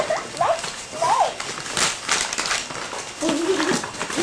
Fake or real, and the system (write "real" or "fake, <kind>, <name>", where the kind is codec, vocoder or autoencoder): real